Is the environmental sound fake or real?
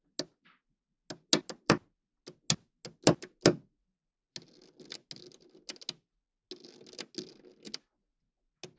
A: real